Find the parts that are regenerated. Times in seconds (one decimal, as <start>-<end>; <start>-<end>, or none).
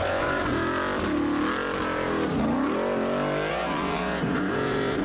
0.0-0.5; 3.5-5.0